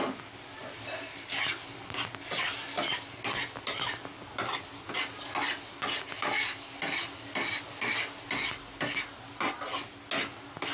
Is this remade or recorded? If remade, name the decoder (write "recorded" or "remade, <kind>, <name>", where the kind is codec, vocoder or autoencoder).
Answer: recorded